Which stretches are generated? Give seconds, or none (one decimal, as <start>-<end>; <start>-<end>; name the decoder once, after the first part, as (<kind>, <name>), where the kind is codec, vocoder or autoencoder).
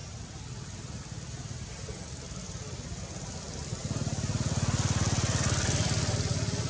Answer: none